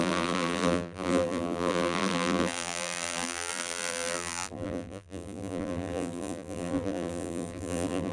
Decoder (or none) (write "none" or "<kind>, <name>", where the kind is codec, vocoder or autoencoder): vocoder, BigVGAN v2